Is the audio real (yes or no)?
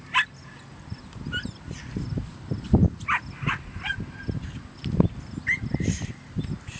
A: yes